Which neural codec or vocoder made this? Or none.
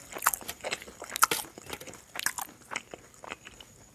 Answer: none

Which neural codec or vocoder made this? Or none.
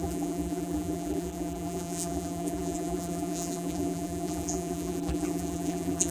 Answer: vocoder, BigVGAN v2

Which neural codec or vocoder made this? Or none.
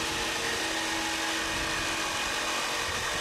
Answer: none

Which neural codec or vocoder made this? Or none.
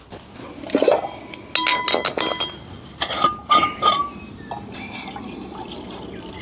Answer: none